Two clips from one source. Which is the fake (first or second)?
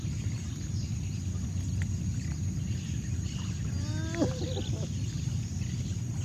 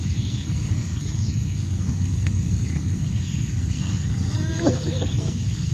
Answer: second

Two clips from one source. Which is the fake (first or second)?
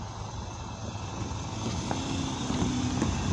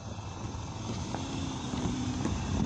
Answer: second